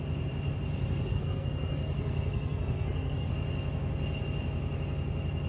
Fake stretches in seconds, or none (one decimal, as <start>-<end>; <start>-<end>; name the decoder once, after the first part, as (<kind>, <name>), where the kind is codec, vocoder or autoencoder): 1.1-3.3 (codec, SNAC)